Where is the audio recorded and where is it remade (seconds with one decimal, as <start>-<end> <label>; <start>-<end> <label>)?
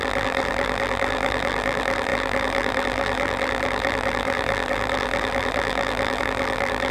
0.0-6.9 remade